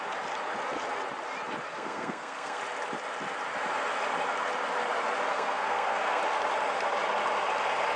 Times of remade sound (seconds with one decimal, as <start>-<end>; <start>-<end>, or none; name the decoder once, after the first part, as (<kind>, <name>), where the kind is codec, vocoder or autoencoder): 1.7-2.6 (codec, SNAC); 5.3-6.2